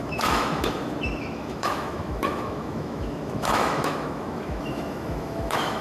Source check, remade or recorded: remade